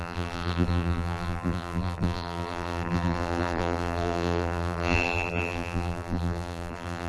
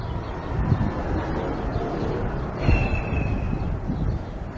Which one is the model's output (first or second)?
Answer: first